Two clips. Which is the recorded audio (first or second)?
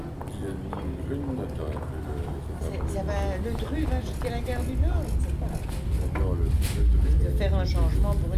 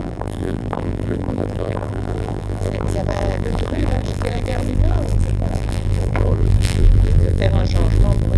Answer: first